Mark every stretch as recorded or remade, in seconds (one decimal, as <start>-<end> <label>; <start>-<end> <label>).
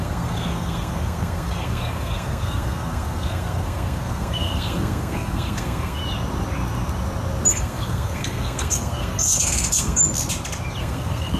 0.0-6.0 remade; 6.0-7.5 recorded; 7.5-10.0 remade; 10.0-10.8 recorded; 10.8-11.4 remade